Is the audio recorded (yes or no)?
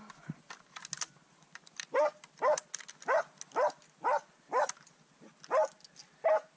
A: yes